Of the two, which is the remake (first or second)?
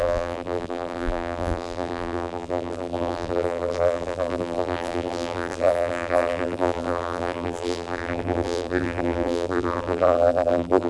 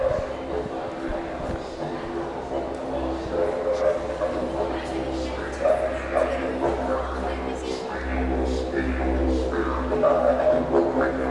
first